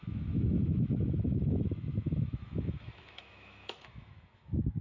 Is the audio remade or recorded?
remade